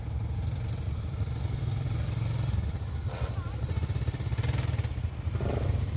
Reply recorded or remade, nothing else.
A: recorded